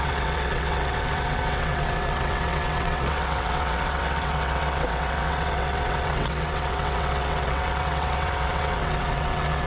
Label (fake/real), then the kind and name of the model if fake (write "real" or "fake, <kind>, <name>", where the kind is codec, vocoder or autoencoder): fake, vocoder, WaveNeXt